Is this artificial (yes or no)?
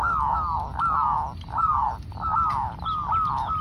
no